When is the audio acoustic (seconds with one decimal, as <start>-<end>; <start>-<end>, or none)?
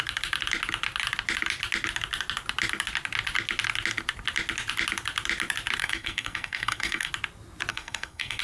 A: 0.0-5.8; 7.1-7.7